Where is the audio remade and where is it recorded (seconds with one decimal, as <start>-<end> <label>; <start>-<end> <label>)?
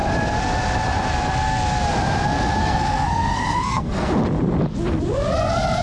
0.0-2.6 recorded; 2.6-4.1 remade; 4.1-5.8 recorded